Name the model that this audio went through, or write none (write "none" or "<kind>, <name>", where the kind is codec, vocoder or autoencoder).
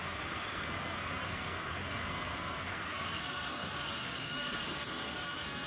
codec, SNAC